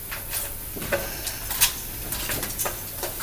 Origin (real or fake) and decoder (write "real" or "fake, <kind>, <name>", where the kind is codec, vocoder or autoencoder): fake, vocoder, BigVGAN v2